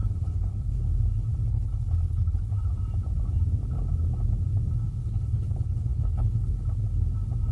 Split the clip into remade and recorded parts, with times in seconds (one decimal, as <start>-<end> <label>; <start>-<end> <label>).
0.0-0.8 remade; 0.8-1.5 recorded; 1.5-2.5 remade; 2.5-5.0 recorded; 5.0-6.5 remade; 6.5-7.5 recorded